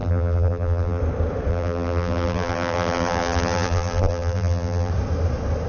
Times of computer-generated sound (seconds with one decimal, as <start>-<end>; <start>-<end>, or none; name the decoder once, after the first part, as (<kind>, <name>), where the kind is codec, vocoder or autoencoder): 0.0-1.0 (vocoder, BigVGAN v2); 1.5-4.9